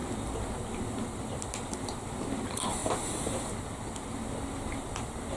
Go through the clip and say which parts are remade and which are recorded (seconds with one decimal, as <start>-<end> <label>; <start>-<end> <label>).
0.0-5.4 recorded